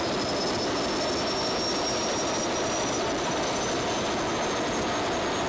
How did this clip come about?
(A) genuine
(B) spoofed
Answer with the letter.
A